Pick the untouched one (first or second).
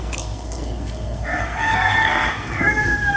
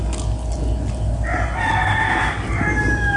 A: second